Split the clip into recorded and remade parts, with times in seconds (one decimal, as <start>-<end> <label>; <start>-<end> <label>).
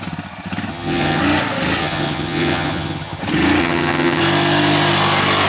0.0-0.7 recorded; 0.7-1.2 remade; 1.2-1.8 recorded; 1.8-3.2 remade; 3.2-3.6 recorded; 3.6-4.2 remade; 4.2-5.5 recorded